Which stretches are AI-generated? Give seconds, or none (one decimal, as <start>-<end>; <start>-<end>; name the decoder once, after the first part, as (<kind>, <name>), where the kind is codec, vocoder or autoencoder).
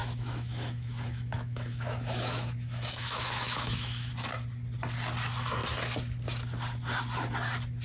0.0-4.1 (autoencoder, DAC-VAE)